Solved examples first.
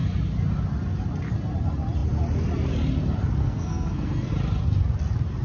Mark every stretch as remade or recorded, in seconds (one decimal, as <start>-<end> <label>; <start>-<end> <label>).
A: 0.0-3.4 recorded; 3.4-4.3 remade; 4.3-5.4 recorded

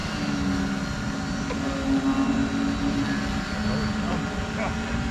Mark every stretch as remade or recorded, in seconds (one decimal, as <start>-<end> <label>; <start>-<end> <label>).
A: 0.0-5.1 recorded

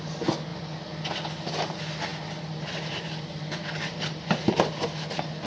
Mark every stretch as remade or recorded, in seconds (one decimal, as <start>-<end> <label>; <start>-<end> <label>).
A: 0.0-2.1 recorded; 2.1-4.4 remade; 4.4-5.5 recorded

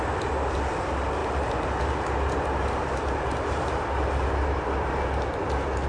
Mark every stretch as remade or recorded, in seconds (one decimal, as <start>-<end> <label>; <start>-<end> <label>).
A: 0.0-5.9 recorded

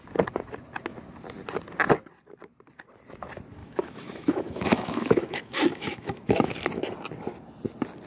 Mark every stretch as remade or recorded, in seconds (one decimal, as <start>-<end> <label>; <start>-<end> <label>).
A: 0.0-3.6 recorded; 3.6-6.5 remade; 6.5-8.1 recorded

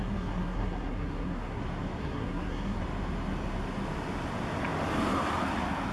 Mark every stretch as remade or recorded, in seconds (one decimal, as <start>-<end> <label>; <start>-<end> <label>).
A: 0.0-1.6 remade; 1.6-2.0 recorded; 2.0-2.8 remade; 2.8-5.9 recorded

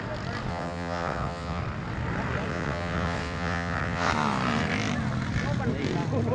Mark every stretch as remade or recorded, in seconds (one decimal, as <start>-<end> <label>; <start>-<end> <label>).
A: 0.0-0.5 recorded; 0.5-1.6 remade; 1.6-2.5 recorded; 2.5-4.1 remade; 4.1-6.3 recorded

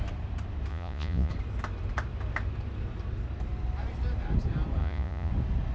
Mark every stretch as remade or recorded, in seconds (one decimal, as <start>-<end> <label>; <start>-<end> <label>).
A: 0.0-0.7 recorded; 0.7-1.3 remade; 1.3-4.8 recorded; 4.8-5.3 remade; 5.3-5.7 recorded